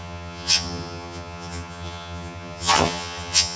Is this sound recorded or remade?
remade